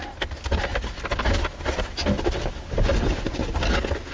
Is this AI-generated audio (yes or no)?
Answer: no